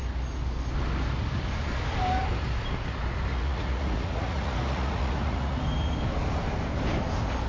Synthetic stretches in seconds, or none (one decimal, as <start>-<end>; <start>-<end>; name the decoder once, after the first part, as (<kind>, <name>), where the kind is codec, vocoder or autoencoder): 3.3-5.6 (vocoder, Vocos)